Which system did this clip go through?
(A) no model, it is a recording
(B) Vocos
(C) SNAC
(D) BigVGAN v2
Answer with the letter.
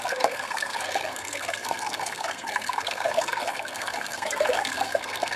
C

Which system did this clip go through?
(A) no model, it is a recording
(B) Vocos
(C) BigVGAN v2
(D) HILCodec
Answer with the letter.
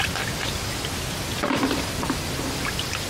A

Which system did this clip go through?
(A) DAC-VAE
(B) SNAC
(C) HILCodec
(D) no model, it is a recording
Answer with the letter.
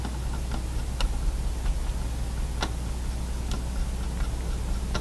D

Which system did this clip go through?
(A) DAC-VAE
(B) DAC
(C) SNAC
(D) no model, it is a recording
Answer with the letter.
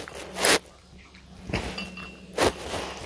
D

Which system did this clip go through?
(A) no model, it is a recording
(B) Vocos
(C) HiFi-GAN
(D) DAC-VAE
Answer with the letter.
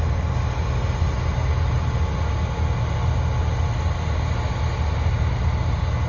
A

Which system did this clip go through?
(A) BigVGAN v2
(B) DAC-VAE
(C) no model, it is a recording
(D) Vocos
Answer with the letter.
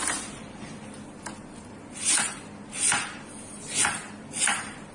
C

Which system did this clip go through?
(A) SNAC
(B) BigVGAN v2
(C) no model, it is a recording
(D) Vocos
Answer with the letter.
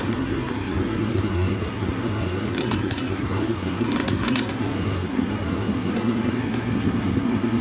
A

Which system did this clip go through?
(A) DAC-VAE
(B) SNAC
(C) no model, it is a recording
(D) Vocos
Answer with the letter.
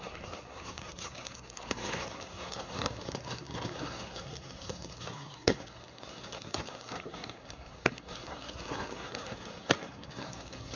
B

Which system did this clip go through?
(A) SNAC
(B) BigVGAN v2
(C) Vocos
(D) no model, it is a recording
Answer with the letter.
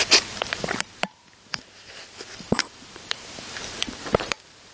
B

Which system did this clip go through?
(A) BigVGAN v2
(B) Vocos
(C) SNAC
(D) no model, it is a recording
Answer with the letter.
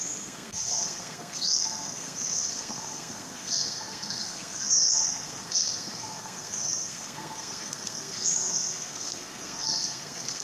C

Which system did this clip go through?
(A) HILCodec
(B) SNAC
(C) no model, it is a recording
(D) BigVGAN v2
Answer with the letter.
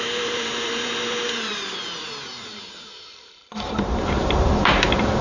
D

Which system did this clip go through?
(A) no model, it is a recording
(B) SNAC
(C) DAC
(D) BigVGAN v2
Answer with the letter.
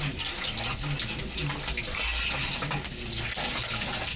A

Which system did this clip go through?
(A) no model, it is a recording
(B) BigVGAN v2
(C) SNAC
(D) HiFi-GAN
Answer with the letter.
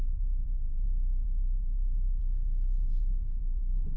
B